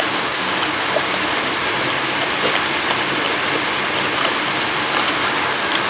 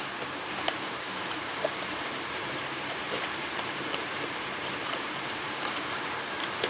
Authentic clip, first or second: first